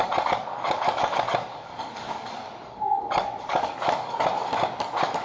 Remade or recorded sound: remade